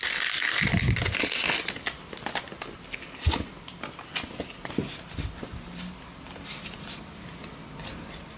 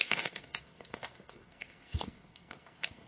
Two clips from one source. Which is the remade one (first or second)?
second